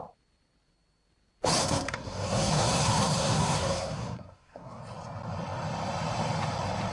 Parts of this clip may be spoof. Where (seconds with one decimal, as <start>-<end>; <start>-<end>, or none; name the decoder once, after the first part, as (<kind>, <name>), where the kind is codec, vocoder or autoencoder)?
1.6-4.8 (codec, SNAC)